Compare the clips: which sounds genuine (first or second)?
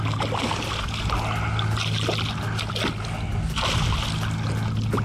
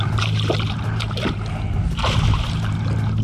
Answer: first